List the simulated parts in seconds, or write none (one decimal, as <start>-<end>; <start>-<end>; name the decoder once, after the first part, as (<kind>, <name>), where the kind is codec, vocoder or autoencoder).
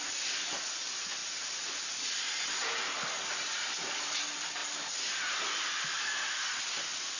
0.0-4.6 (vocoder, BigVGAN v2); 5.3-7.2